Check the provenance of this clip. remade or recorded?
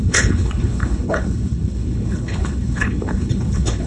remade